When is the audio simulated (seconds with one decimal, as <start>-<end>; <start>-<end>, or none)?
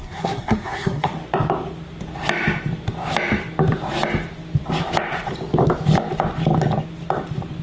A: 0.0-1.1